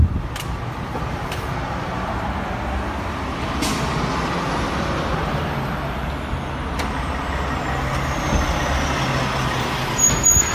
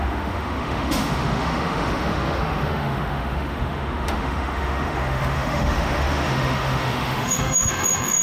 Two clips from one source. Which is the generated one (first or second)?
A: second